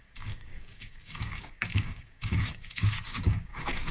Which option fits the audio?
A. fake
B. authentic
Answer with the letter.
A